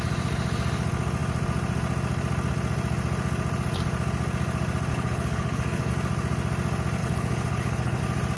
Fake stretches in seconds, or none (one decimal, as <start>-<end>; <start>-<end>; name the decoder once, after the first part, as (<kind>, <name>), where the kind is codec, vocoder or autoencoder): 4.9-5.9 (codec, HILCodec); 7.0-8.0